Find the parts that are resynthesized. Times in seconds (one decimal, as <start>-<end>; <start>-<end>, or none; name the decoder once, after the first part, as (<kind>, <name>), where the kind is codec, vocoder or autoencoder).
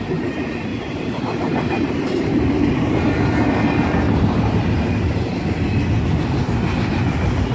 0.7-4.6 (vocoder, BigVGAN v2)